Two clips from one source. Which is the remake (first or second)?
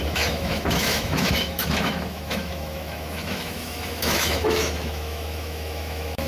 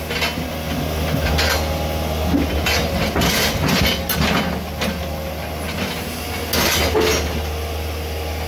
first